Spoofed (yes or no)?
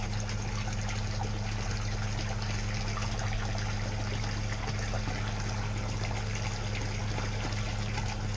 no